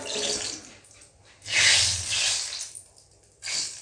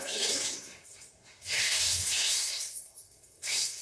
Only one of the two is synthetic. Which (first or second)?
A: second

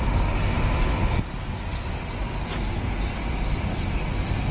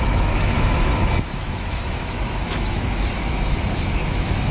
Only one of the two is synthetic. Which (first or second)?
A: second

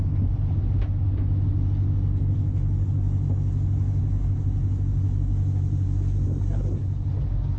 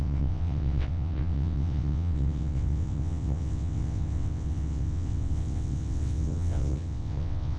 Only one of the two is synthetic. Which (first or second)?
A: second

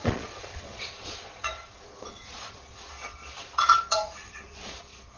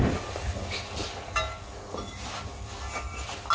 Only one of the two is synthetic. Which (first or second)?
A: first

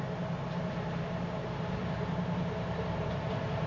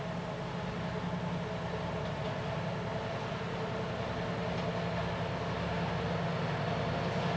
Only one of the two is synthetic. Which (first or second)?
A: first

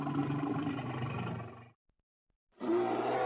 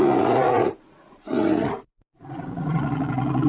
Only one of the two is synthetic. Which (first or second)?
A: second